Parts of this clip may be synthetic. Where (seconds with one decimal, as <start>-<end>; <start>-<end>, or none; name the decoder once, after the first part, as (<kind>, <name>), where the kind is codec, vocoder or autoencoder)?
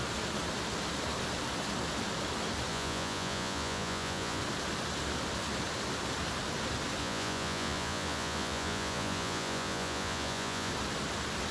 2.7-4.4 (vocoder, Vocos); 7.0-10.7